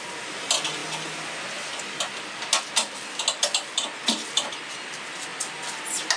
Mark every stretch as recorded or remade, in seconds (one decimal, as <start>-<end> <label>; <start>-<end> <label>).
0.0-6.2 recorded